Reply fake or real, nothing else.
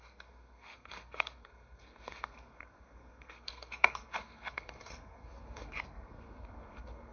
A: fake